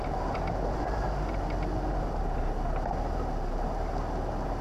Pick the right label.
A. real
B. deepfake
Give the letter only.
A